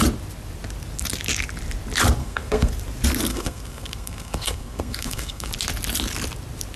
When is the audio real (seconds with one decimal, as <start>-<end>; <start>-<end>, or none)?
0.0-2.2; 2.7-3.3; 5.5-6.8